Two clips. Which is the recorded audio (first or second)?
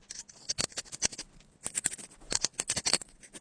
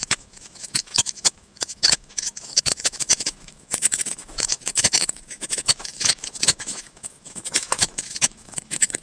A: first